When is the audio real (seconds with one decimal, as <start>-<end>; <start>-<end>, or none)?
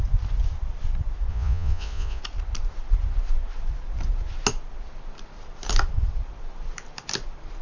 0.0-1.3; 2.2-7.6